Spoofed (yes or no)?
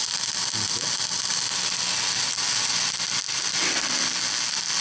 no